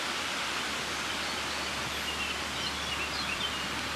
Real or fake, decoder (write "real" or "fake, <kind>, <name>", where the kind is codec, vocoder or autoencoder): real